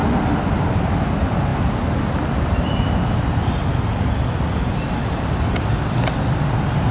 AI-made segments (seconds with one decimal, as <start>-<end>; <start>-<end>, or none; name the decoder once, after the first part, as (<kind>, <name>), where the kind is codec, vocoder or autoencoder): none